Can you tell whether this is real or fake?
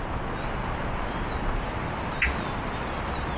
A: real